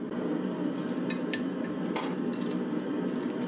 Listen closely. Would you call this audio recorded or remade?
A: recorded